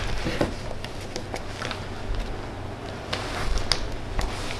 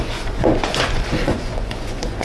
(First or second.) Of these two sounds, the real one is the first